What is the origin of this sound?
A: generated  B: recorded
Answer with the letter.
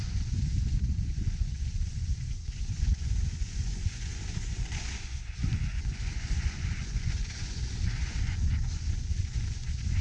A